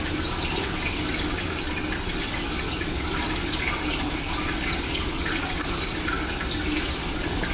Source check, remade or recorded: recorded